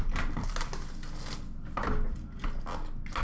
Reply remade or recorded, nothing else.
recorded